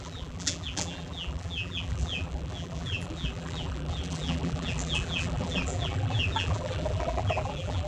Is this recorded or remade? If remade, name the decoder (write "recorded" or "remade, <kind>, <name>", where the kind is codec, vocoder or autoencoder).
remade, vocoder, BigVGAN v2